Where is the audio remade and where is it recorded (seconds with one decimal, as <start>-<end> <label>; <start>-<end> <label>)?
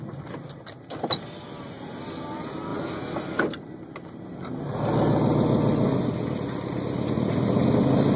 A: 0.0-8.2 recorded